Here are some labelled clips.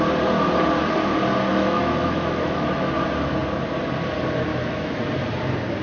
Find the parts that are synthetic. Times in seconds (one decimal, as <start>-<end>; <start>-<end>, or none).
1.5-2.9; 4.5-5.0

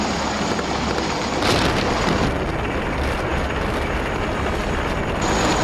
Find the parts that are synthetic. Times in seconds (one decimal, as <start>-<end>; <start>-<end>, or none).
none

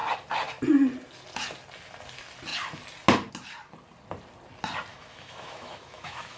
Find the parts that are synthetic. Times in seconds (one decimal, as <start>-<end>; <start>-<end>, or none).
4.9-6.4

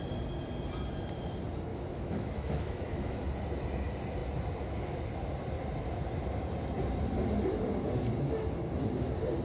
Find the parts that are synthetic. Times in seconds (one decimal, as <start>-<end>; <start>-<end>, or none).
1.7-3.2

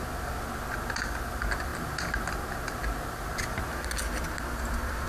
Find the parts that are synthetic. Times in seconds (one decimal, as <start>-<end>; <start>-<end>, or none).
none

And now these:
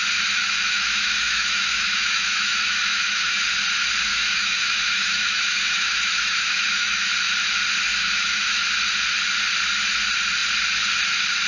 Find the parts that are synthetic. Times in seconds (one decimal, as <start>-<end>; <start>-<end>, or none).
0.4-3.4; 4.1-7.1; 7.9-8.6

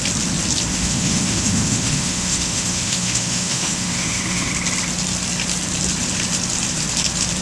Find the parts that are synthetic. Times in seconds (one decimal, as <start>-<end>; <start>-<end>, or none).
0.7-4.5

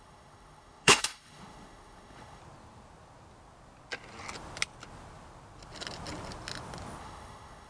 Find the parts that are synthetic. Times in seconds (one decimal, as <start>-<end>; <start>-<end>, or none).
0.0-2.4; 7.0-7.7